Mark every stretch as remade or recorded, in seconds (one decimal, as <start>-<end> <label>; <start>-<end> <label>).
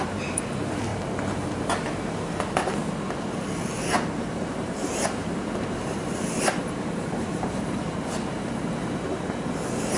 0.0-2.8 remade; 2.8-4.3 recorded; 4.3-10.0 remade